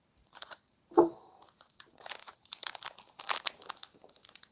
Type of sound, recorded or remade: remade